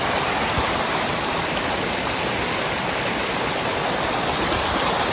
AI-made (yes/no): no